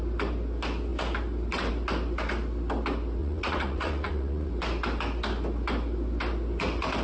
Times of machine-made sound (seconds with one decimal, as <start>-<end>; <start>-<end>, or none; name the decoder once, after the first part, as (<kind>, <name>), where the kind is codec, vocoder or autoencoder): 3.2-4.5 (vocoder, Vocos)